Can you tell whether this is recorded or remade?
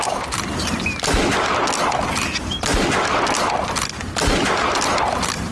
recorded